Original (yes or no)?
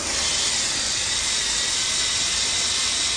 yes